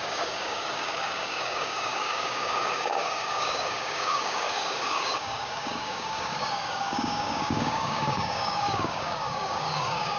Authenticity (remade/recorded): remade